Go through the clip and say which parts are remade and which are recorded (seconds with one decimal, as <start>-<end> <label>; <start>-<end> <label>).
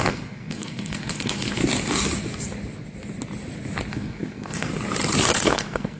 0.0-1.6 remade; 1.6-3.9 recorded; 3.9-4.7 remade; 4.7-5.4 recorded; 5.4-6.0 remade